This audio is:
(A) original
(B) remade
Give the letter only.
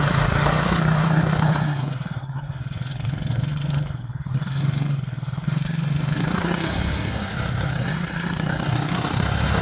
B